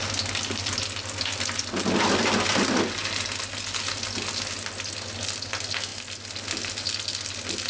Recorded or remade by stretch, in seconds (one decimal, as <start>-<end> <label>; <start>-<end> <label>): 0.0-7.7 recorded